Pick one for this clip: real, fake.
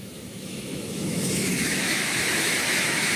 fake